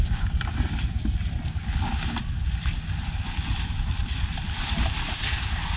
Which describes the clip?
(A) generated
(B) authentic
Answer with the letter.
B